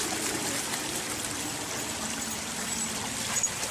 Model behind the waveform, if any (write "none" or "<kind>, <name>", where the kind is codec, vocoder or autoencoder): none